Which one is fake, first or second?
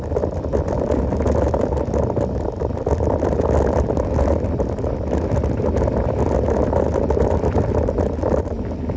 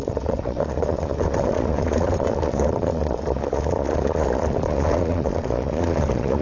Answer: second